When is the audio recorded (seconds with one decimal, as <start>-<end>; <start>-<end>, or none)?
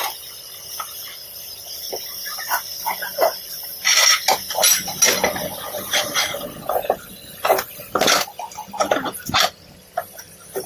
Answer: 0.0-10.7